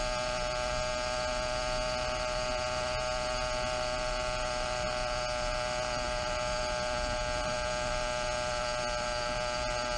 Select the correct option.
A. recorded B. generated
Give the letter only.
A